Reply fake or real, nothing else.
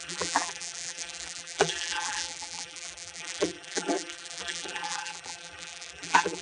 fake